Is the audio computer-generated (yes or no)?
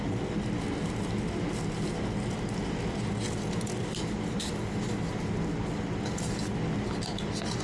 no